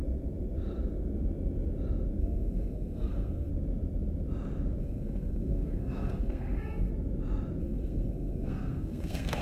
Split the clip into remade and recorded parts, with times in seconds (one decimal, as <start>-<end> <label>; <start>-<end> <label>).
0.0-2.2 recorded; 2.2-3.5 remade; 3.5-4.8 recorded; 4.8-6.9 remade; 6.9-7.6 recorded; 7.6-9.4 remade